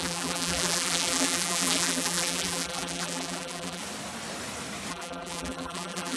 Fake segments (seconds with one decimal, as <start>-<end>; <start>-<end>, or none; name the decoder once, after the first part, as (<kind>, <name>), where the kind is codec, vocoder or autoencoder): 0.0-3.8 (vocoder, BigVGAN v2); 4.9-6.2